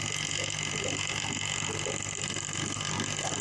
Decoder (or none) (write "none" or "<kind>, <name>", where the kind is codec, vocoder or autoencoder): none